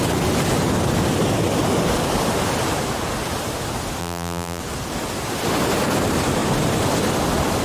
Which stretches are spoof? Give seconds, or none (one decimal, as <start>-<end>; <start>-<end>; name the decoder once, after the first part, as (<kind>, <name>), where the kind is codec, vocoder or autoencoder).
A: 4.0-4.6 (vocoder, BigVGAN v2)